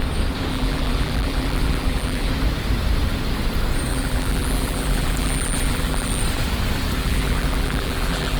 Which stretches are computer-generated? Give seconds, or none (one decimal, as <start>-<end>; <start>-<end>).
0.5-2.3; 3.9-6.2; 7.0-8.4